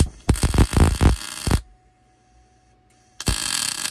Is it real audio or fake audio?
real